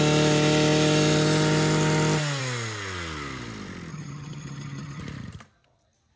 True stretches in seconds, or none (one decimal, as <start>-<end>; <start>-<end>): 0.0-3.9; 5.0-6.2